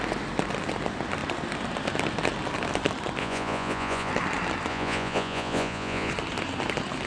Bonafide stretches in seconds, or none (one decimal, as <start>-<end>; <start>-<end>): 0.0-3.2; 4.1-4.7; 6.1-7.1